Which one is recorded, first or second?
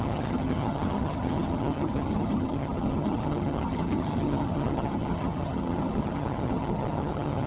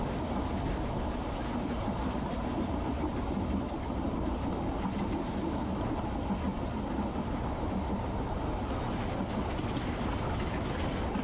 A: second